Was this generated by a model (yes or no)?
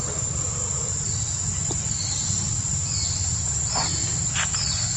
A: no